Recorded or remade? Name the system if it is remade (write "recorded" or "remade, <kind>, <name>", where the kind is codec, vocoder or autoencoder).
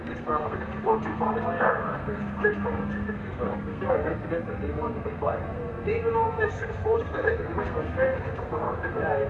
remade, codec, SNAC